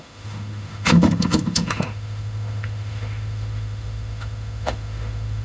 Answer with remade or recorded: remade